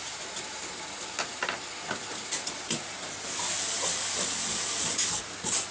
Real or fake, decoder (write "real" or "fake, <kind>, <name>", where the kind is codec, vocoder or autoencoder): real